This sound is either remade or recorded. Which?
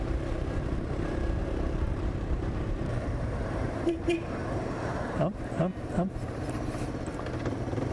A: remade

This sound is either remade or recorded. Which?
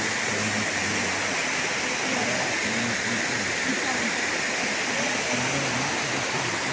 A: recorded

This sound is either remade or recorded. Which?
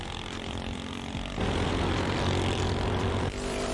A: remade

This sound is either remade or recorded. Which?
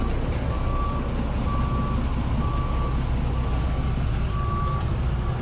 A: recorded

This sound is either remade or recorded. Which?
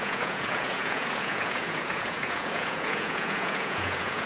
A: remade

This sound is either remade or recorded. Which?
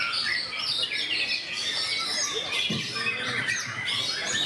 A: recorded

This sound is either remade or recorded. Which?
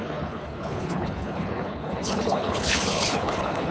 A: remade